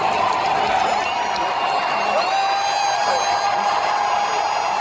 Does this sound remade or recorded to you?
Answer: recorded